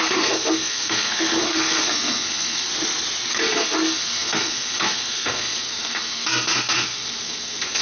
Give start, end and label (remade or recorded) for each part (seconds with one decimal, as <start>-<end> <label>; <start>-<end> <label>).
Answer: 0.0-2.7 remade; 2.7-3.3 recorded; 3.3-7.8 remade